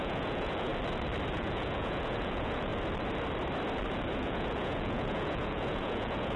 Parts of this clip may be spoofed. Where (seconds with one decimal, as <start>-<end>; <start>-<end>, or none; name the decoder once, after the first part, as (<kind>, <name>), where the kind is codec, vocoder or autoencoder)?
0.0-0.7 (vocoder, Vocos); 1.3-2.7; 4.1-6.4